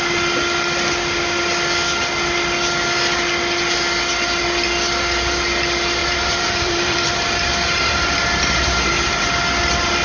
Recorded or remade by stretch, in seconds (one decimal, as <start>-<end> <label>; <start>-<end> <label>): 0.0-6.0 recorded; 6.0-8.9 remade; 8.9-10.0 recorded